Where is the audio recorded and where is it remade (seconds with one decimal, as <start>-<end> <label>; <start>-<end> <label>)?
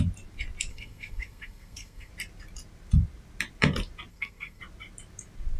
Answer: 0.0-0.7 recorded; 0.7-2.1 remade; 2.1-4.1 recorded; 4.1-4.6 remade; 4.6-5.6 recorded